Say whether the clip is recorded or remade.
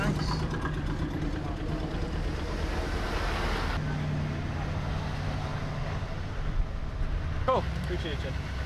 recorded